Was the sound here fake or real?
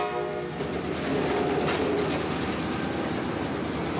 real